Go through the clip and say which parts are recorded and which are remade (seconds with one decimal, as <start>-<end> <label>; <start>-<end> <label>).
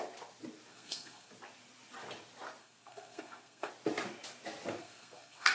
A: 0.0-0.7 recorded; 0.7-1.3 remade; 1.3-2.6 recorded; 2.6-3.7 remade; 3.7-4.8 recorded; 4.8-5.5 remade